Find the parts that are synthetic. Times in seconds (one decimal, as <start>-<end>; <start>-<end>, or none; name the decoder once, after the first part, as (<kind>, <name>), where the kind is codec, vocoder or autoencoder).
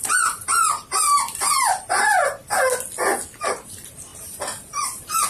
0.0-2.4 (vocoder, BigVGAN v2); 3.5-4.1